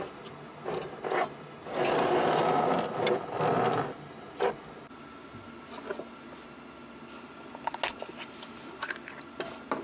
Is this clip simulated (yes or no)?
no